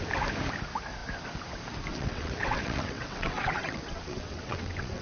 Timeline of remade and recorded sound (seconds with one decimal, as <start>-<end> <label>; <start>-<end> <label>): 0.0-1.9 recorded; 1.9-5.0 remade